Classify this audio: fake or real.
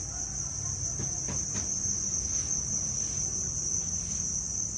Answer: real